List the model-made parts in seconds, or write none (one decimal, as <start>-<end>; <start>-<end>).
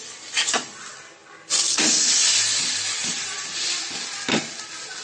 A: none